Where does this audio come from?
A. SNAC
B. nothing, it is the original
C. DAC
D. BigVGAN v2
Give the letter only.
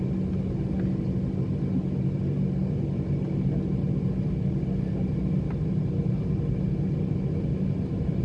B